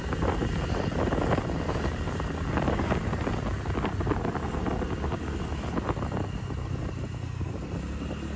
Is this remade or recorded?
recorded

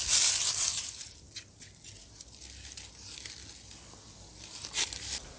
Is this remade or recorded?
recorded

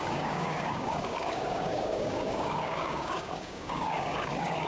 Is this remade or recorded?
remade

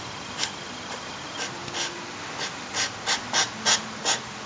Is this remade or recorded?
recorded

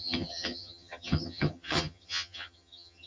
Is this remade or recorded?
remade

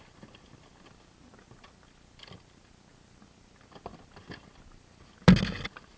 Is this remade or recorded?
recorded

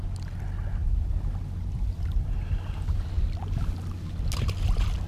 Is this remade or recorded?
recorded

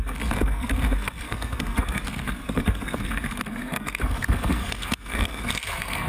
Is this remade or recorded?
remade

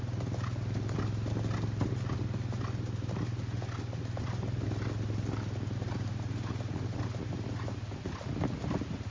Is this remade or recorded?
recorded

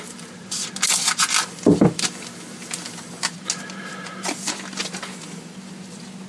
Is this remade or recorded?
recorded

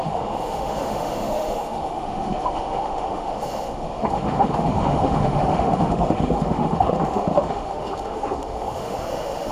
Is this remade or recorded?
remade